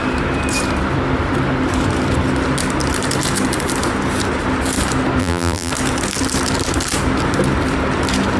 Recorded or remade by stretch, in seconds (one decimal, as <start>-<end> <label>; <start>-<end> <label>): 0.0-5.2 recorded; 5.2-5.7 remade; 5.7-8.4 recorded